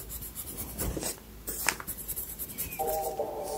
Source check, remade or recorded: remade